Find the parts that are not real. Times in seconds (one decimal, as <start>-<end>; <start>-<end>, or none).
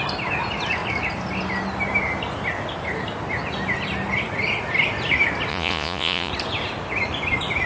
5.5-6.3